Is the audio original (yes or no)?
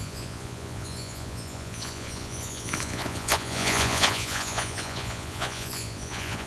no